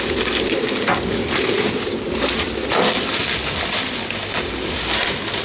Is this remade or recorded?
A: recorded